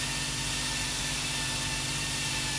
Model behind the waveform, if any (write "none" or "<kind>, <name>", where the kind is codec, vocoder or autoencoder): none